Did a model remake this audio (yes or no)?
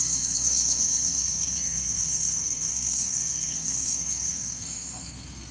yes